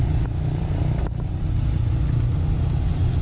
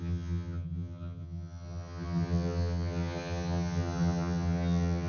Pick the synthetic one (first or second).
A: second